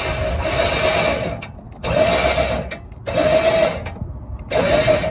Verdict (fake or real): real